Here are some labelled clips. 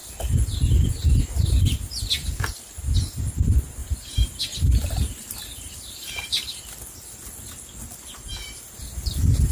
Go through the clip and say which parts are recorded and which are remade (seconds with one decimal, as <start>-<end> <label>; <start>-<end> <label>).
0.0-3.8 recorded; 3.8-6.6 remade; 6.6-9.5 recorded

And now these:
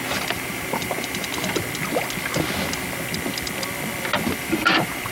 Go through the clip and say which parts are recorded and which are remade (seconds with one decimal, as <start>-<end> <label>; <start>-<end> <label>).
0.0-1.3 remade; 1.3-4.4 recorded; 4.4-5.1 remade

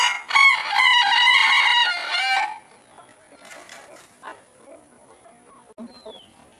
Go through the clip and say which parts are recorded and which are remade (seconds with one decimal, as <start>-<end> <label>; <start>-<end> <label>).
0.0-2.0 recorded; 2.0-5.3 remade; 5.3-6.6 recorded

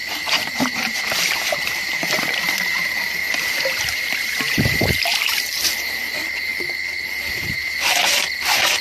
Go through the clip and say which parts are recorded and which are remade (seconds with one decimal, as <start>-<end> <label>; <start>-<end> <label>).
0.0-3.2 remade; 3.2-3.9 recorded; 3.9-6.5 remade; 6.5-7.3 recorded; 7.3-8.8 remade

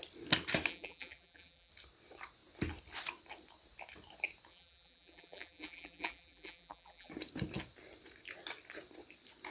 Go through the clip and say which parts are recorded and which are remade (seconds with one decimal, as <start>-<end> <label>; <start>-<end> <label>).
0.0-0.7 recorded; 0.7-1.7 remade; 1.7-4.5 recorded; 4.5-7.1 remade; 7.1-9.5 recorded